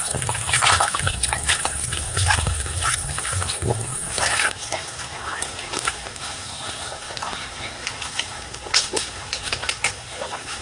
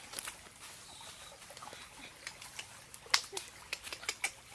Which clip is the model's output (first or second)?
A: first